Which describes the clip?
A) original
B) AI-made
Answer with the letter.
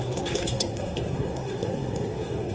B